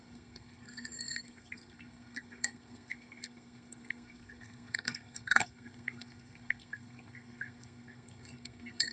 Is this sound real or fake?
fake